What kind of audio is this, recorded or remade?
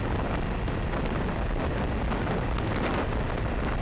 recorded